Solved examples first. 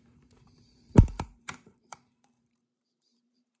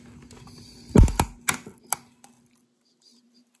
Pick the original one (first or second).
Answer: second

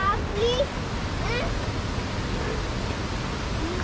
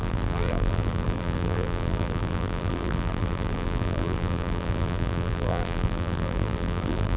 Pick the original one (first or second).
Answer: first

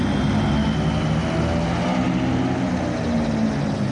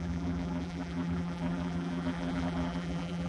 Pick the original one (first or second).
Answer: first